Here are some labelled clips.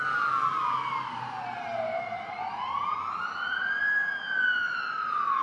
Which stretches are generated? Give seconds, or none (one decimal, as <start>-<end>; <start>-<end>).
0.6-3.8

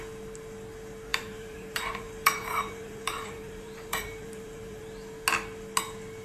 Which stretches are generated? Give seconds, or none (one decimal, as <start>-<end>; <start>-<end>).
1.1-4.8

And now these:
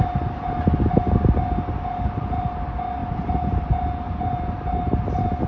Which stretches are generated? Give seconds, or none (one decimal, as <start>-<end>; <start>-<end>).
3.0-3.7

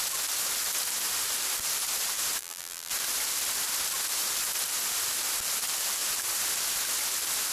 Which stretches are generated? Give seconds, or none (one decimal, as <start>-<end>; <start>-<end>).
2.4-2.9